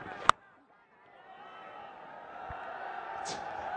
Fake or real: real